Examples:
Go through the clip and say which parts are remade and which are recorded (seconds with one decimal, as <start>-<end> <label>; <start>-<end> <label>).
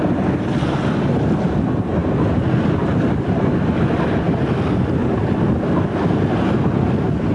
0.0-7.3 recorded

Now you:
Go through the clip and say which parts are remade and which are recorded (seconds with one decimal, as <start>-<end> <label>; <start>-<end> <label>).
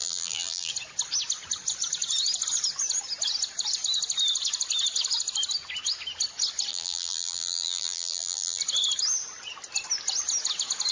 0.0-0.7 remade; 0.7-6.7 recorded; 6.7-8.6 remade; 8.6-10.9 recorded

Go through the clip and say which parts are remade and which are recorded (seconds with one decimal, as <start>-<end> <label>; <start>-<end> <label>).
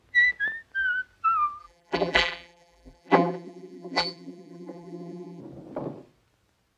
0.0-1.6 recorded; 1.6-5.4 remade; 5.4-6.8 recorded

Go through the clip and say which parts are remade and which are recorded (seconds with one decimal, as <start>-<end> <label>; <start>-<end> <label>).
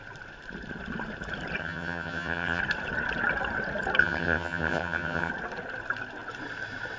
0.0-1.6 recorded; 1.6-2.6 remade; 2.6-4.0 recorded; 4.0-5.3 remade; 5.3-7.0 recorded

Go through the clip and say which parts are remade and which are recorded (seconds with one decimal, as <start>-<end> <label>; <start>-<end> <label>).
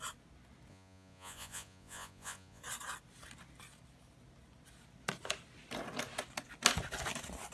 0.0-0.7 recorded; 0.7-2.6 remade; 2.6-7.5 recorded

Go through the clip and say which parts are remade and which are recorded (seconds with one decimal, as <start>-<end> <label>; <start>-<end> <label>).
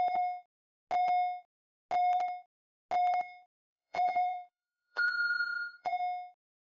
0.0-3.7 recorded; 3.7-5.9 remade; 5.9-6.7 recorded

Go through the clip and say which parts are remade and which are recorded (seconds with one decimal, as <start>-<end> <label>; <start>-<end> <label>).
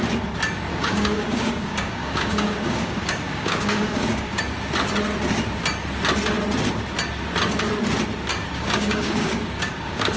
0.0-0.7 recorded; 0.7-4.4 remade; 4.4-8.3 recorded; 8.3-10.2 remade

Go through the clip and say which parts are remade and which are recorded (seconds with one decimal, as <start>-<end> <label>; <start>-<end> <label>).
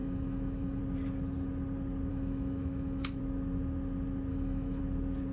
0.0-0.8 remade; 0.8-2.1 recorded; 2.1-3.2 remade; 3.2-4.3 recorded; 4.3-4.8 remade; 4.8-5.3 recorded